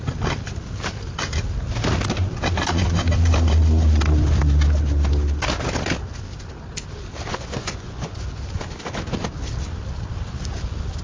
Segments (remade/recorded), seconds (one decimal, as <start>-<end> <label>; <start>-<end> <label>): 0.0-7.3 recorded; 7.3-8.4 remade; 8.4-11.0 recorded